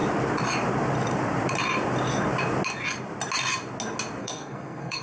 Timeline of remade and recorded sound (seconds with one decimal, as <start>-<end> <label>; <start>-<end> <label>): 0.0-4.2 recorded; 4.2-5.0 remade